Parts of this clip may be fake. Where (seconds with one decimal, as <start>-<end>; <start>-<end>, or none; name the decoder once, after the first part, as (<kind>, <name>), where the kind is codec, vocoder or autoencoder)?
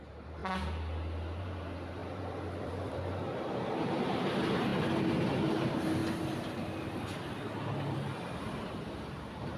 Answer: 0.0-0.4 (vocoder, BigVGAN v2); 1.4-6.0; 8.6-9.6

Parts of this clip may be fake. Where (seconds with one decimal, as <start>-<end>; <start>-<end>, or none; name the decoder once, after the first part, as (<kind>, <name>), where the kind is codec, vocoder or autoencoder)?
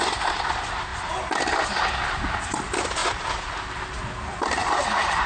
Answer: 4.6-5.3 (vocoder, BigVGAN v2)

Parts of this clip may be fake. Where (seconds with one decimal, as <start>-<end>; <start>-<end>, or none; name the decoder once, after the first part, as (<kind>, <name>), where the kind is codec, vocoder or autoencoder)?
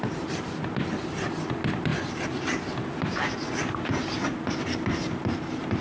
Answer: none